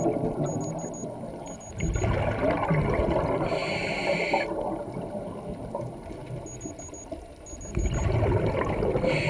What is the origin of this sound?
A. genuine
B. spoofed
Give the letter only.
A